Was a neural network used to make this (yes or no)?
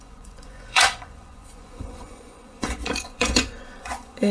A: yes